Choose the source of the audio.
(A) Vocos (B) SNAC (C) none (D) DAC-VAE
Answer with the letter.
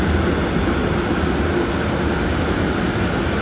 C